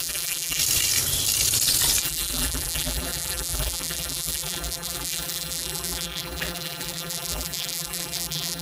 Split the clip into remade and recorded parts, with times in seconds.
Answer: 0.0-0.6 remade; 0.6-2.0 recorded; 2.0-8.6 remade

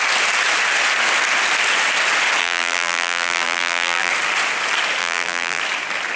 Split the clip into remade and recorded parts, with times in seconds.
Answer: 0.0-2.4 recorded; 2.4-4.1 remade; 4.1-5.0 recorded; 5.0-5.6 remade; 5.6-6.2 recorded

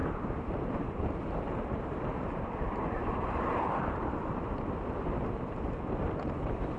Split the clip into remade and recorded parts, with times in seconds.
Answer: 0.0-6.8 remade

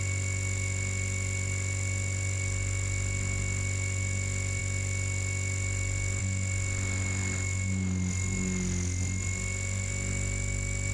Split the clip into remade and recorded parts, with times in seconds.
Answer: 0.0-10.9 recorded

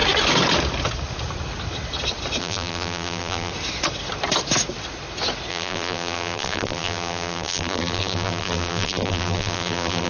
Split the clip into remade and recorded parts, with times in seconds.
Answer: 0.0-2.4 recorded; 2.4-3.5 remade; 3.5-5.5 recorded; 5.5-10.1 remade

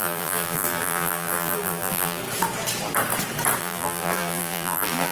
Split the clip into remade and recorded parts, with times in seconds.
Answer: 0.0-2.2 remade; 2.2-3.6 recorded; 3.6-5.1 remade

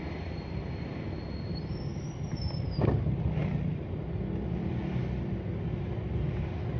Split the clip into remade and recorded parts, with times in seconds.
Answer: 0.0-1.9 recorded; 1.9-2.8 remade; 2.8-6.8 recorded